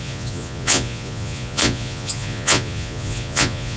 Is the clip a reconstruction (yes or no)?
yes